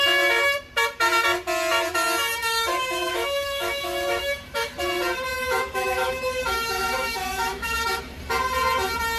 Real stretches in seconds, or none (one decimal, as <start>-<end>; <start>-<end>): 0.0-2.4; 4.8-5.3; 8.0-9.2